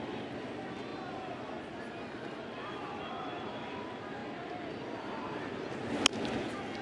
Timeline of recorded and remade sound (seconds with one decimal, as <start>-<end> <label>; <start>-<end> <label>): 0.0-6.8 recorded